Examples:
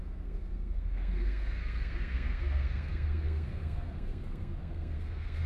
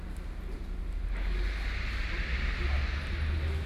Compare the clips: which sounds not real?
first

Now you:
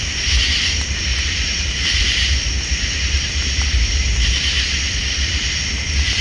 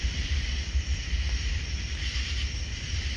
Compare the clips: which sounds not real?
second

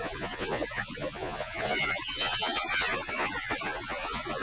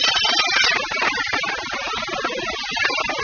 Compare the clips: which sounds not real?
first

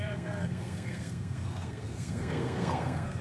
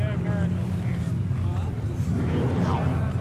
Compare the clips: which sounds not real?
first